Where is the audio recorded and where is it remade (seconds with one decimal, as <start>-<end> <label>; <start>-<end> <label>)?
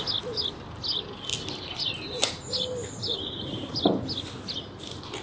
0.0-2.8 recorded; 2.8-3.7 remade; 3.7-5.2 recorded